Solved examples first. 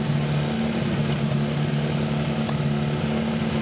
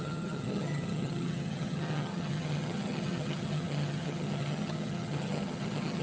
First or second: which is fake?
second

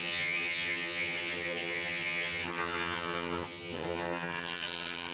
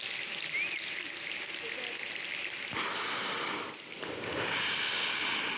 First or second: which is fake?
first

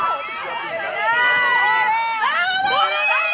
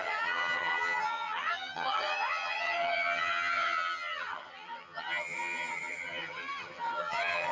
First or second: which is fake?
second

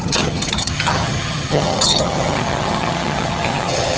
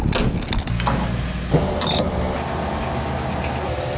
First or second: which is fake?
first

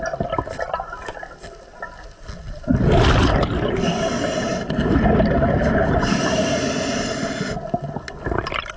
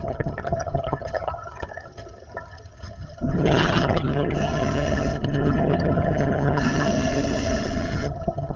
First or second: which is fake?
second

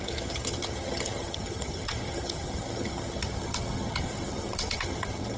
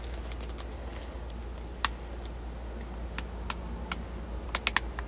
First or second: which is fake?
first